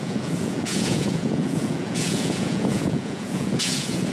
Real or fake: fake